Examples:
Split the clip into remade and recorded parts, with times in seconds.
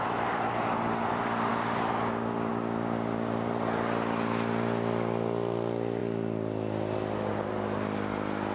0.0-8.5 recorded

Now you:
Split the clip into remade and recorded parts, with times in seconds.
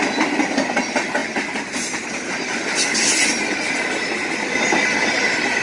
0.0-5.6 recorded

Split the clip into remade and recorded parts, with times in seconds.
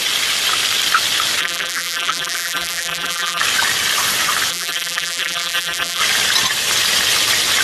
0.0-1.4 recorded; 1.4-3.4 remade; 3.4-4.5 recorded; 4.5-6.0 remade; 6.0-7.6 recorded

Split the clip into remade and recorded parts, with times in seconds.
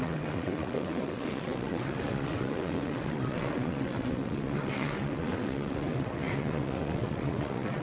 0.0-7.8 remade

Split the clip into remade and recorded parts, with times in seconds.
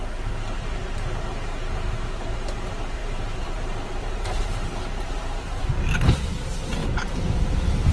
0.0-3.0 recorded; 3.0-5.6 remade; 5.6-6.8 recorded; 6.8-7.9 remade